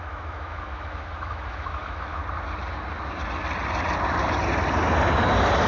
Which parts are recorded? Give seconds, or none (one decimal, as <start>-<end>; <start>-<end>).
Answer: 2.2-5.7